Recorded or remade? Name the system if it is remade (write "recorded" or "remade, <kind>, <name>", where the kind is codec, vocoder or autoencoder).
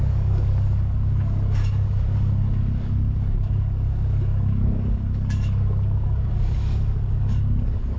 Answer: remade, codec, DAC